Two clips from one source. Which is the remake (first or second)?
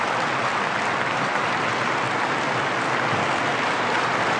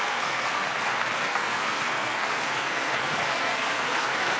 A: second